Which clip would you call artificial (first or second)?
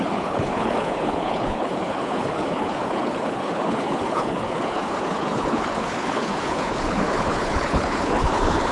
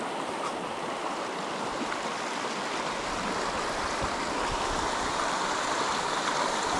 first